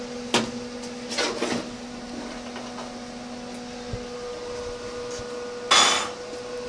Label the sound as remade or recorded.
recorded